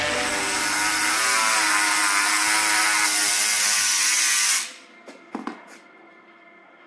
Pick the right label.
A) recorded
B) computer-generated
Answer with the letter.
A